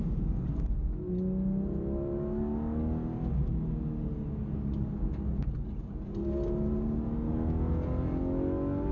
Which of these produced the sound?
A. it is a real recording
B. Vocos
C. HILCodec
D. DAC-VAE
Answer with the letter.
A